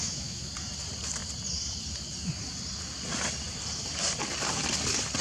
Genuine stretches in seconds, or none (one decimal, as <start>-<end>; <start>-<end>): 0.5-5.2